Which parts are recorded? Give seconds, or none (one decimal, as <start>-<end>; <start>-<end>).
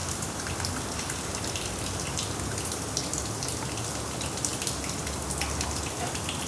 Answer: 0.0-6.5